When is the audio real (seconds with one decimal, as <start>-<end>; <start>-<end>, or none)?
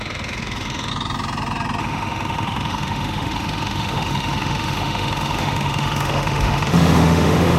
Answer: 0.9-1.8